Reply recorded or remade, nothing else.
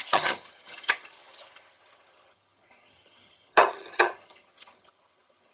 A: remade